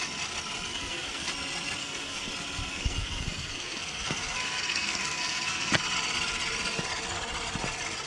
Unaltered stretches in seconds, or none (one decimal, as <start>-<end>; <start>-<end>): 0.0-0.7; 1.3-1.8; 2.3-2.7; 5.7-8.1